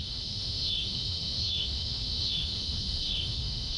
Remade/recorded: remade